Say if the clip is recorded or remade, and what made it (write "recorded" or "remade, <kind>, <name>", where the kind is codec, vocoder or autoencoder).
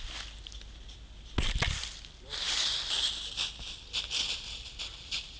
recorded